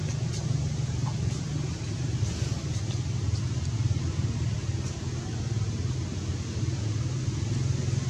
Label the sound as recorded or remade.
recorded